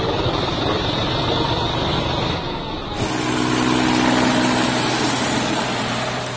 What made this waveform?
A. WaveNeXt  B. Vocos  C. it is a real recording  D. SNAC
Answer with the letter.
C